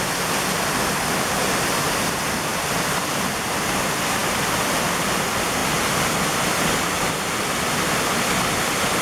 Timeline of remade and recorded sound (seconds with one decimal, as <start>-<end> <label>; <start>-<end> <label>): 0.0-9.0 recorded